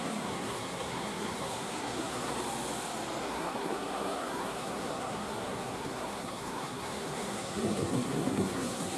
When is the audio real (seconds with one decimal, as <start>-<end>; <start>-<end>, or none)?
2.3-3.2